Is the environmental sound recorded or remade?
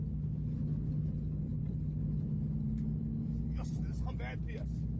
recorded